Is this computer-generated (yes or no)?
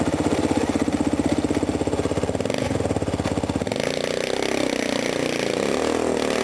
no